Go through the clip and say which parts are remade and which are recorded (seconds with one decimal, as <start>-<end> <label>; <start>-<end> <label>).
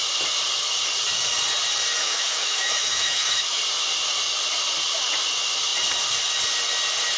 0.0-2.0 recorded; 2.0-3.6 remade; 3.6-7.2 recorded